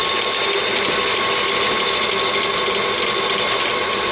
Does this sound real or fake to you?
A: real